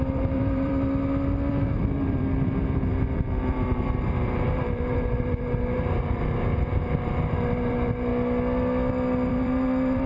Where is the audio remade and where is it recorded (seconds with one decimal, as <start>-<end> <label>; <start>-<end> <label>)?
0.0-0.7 remade; 0.7-1.5 recorded; 1.5-8.1 remade; 8.1-9.3 recorded; 9.3-10.1 remade